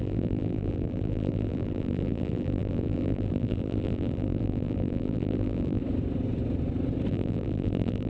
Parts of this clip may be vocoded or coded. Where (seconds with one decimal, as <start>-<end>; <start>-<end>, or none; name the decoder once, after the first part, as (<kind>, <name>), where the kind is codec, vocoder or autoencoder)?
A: 0.0-5.8 (vocoder, BigVGAN v2); 7.1-8.1